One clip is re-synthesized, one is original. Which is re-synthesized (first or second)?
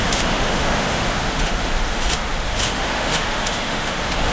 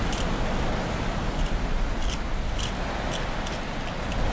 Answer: first